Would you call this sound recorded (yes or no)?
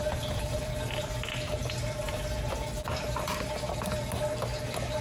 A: yes